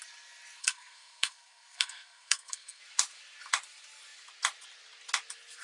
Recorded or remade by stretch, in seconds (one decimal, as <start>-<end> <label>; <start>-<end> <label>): 0.0-0.6 recorded; 0.6-2.8 remade; 2.8-5.6 recorded